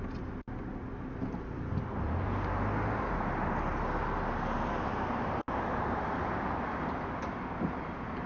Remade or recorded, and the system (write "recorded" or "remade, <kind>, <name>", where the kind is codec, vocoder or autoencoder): recorded